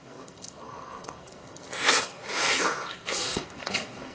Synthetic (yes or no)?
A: yes